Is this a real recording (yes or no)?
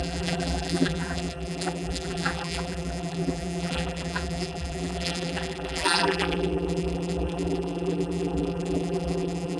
no